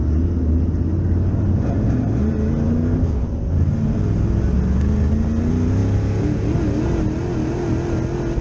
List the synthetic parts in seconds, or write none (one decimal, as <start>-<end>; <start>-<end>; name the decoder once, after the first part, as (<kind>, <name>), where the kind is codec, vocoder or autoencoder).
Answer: none

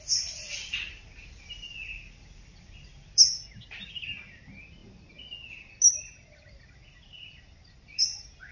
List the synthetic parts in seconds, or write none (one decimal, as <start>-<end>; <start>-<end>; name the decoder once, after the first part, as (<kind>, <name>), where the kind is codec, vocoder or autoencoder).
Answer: none

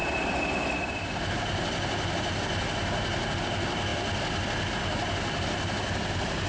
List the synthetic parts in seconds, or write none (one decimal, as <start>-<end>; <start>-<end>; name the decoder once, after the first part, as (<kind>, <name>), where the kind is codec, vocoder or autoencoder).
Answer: none

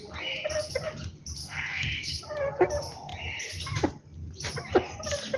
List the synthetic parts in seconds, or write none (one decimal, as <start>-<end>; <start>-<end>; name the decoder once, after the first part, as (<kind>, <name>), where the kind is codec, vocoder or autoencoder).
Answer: 1.4-2.2 (codec, SNAC)